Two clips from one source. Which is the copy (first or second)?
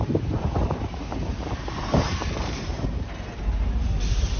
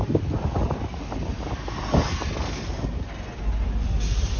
first